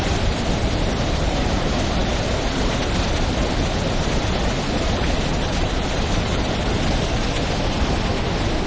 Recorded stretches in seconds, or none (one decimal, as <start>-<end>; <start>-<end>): 0.0-8.7

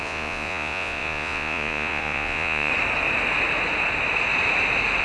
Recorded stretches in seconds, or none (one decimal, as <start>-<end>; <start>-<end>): 2.7-5.0

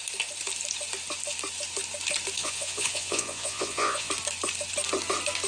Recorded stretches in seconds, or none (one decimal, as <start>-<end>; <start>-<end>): 0.0-2.4; 4.1-5.5

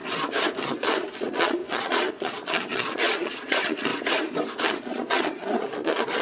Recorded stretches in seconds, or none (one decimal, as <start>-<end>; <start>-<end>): 0.0-0.6; 3.9-4.6

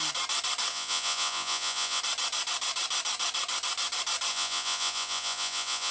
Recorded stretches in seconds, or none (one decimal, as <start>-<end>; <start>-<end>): 0.0-0.7; 2.0-4.3

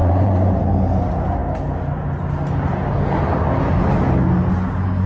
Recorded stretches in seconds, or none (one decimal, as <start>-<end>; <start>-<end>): 0.6-5.1

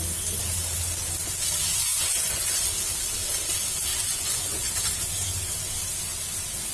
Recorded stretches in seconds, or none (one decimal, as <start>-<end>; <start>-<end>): 0.0-1.7; 2.7-3.9; 4.7-6.7